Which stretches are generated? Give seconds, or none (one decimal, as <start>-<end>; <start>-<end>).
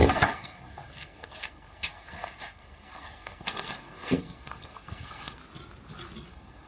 0.0-5.4; 6.3-6.7